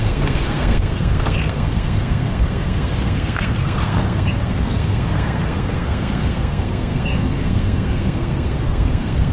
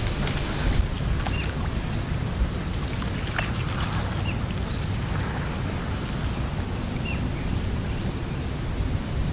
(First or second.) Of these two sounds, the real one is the second